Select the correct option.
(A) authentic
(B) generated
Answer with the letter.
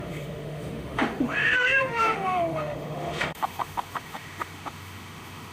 B